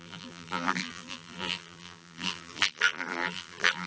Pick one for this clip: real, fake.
fake